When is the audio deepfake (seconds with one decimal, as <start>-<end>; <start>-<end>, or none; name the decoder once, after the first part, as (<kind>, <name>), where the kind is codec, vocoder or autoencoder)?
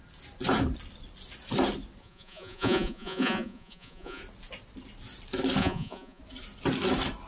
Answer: 2.0-4.2 (vocoder, Vocos); 5.6-6.2